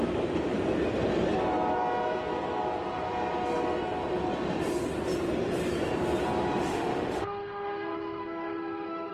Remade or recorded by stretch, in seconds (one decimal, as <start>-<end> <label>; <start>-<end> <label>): 0.0-6.7 recorded; 6.7-9.1 remade